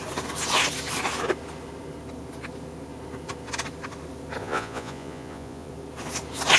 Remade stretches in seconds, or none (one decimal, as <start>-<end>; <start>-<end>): 4.4-5.7